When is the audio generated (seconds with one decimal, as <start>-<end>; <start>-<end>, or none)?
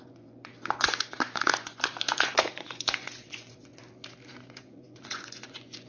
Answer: 0.0-3.7; 4.3-5.9